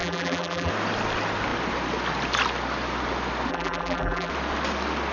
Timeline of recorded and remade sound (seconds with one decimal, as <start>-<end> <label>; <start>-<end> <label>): 0.0-0.7 remade; 0.7-3.5 recorded; 3.5-4.3 remade; 4.3-5.1 recorded